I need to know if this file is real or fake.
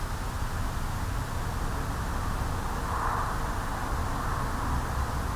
real